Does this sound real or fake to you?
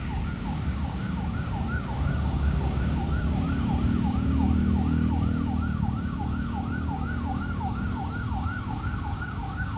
fake